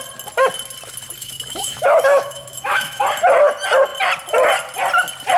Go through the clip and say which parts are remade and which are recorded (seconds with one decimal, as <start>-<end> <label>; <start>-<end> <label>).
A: 0.0-1.2 recorded; 1.2-3.0 remade; 3.0-5.4 recorded